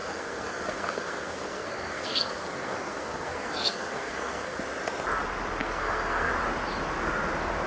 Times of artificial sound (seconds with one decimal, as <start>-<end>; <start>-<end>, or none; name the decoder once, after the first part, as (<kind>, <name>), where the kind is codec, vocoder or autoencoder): 0.0-4.6 (codec, SNAC); 5.6-6.3